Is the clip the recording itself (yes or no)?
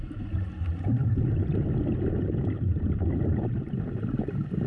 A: yes